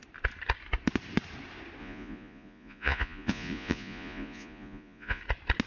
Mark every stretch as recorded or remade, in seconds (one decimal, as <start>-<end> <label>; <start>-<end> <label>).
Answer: 0.0-1.8 recorded; 1.8-5.2 remade; 5.2-5.7 recorded

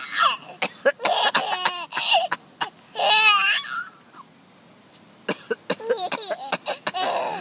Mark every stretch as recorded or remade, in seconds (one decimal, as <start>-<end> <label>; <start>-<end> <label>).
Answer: 0.0-7.4 recorded